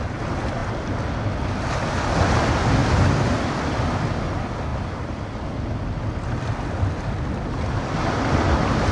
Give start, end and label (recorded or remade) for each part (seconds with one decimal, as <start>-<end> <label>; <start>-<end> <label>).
0.0-8.9 recorded